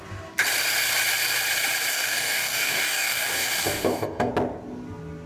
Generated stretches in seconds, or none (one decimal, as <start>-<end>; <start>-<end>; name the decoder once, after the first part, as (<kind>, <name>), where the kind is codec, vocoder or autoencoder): 1.9-4.3 (codec, DAC)